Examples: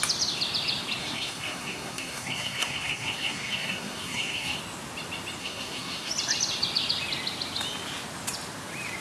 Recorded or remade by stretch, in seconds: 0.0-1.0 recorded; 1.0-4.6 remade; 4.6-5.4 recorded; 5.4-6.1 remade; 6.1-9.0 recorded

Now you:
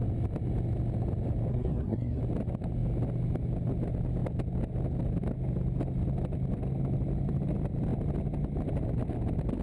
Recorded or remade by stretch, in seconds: 0.0-1.5 recorded; 1.5-2.2 remade; 2.2-9.6 recorded

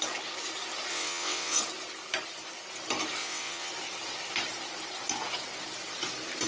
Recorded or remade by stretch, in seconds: 0.0-0.9 recorded; 0.9-1.6 remade; 1.6-3.2 recorded; 3.2-3.7 remade; 3.7-6.5 recorded

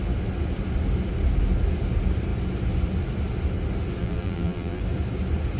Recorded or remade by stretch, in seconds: 0.0-4.0 recorded; 4.0-4.8 remade; 4.8-5.6 recorded